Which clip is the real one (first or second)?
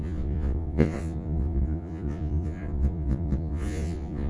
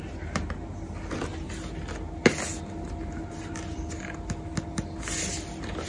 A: second